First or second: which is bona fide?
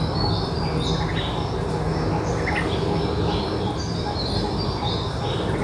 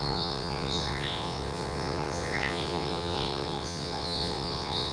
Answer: first